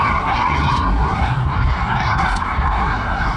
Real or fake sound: fake